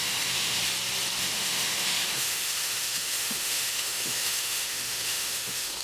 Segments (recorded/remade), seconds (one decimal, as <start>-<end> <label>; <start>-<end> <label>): 0.0-0.6 remade; 0.6-1.2 recorded; 1.2-5.8 remade